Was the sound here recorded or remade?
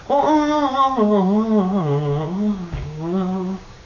remade